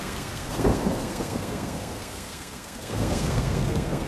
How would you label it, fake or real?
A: fake